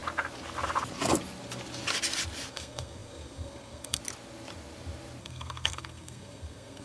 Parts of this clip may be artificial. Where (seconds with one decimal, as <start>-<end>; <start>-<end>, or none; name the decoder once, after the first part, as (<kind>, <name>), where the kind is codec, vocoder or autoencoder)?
2.5-4.0 (codec, SNAC); 5.2-6.8